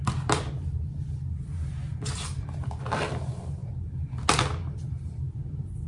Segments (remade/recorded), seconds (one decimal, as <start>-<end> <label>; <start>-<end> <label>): 0.0-5.9 recorded